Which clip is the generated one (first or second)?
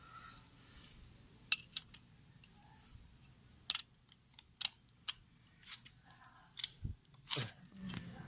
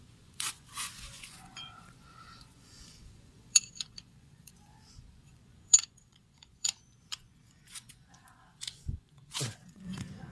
second